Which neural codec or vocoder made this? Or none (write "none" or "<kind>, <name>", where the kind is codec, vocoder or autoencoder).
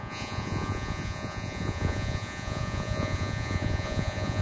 vocoder, Vocos